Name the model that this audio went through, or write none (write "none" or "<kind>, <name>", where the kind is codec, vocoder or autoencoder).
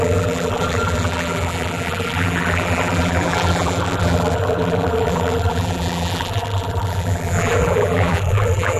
vocoder, BigVGAN v2